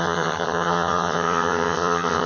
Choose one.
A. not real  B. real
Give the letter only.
A